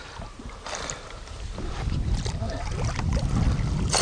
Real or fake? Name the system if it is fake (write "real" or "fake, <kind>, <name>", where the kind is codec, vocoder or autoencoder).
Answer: real